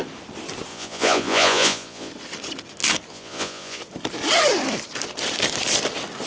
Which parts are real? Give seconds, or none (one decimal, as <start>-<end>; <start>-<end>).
0.0-0.7; 2.1-3.1; 3.8-6.3